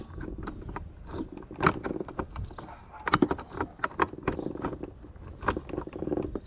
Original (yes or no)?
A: yes